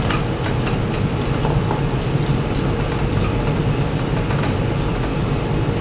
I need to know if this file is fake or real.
fake